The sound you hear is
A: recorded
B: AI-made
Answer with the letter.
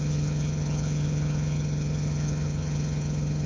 B